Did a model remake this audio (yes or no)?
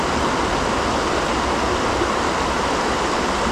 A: no